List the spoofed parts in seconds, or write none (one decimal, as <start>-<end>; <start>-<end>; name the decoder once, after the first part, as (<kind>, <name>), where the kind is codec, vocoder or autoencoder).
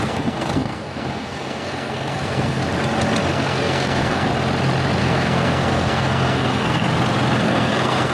0.0-2.6 (codec, SNAC); 3.3-4.3; 5.0-6.9; 7.4-8.1